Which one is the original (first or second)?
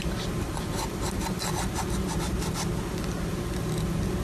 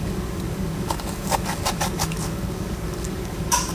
first